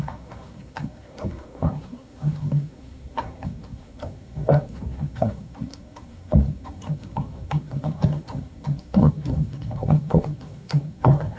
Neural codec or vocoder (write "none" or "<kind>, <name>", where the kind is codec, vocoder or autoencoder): codec, SNAC